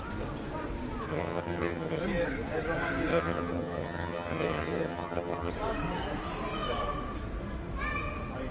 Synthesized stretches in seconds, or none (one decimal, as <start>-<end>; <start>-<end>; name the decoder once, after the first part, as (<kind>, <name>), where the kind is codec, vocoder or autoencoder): 1.1-2.0 (vocoder, HiFi-GAN); 3.1-5.5